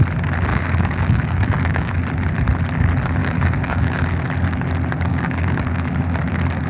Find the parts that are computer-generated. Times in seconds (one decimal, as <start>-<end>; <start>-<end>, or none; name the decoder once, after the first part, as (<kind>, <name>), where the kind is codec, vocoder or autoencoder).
0.5-2.0 (codec, DAC); 3.2-4.0; 5.1-5.9

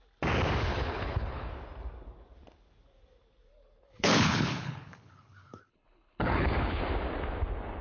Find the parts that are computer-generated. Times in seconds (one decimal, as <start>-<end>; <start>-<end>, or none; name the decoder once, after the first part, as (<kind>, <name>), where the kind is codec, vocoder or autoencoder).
0.7-1.5 (codec, HILCodec); 3.5-6.8